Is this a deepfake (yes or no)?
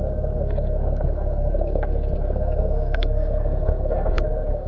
yes